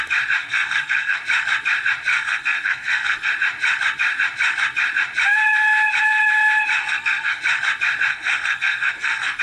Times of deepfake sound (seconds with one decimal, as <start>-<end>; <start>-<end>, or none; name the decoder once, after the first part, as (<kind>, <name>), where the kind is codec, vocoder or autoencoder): 0.4-1.2 (codec, SNAC); 2.1-3.3; 6.8-7.4; 8.1-9.4